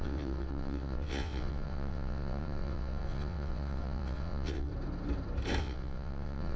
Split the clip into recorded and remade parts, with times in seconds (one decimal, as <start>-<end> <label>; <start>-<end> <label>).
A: 0.0-4.7 remade; 4.7-5.6 recorded; 5.6-6.6 remade